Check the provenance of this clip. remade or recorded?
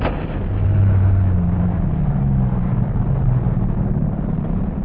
recorded